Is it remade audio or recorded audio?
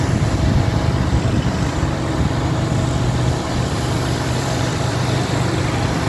remade